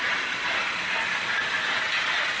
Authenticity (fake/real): real